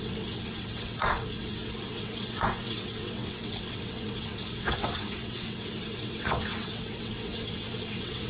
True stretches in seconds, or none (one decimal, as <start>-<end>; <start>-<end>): none